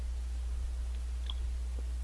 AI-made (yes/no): no